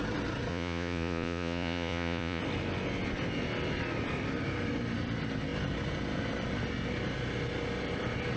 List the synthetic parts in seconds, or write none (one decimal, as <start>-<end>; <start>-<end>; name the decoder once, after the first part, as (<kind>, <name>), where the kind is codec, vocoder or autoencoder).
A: 0.5-2.4 (vocoder, Vocos)